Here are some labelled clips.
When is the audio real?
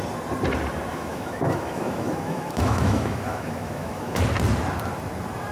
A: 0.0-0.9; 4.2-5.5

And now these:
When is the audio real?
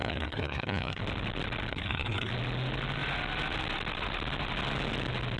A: 1.0-1.7; 2.3-5.4